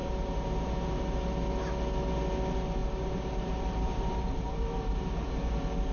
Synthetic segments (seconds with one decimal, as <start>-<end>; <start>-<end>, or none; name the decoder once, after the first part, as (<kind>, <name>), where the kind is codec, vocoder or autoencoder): 0.0-1.3 (vocoder, BigVGAN v2); 2.8-5.5